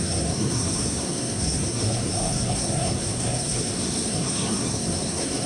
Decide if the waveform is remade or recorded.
remade